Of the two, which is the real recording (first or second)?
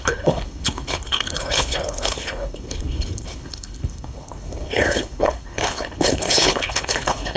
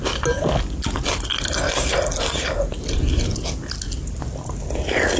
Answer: second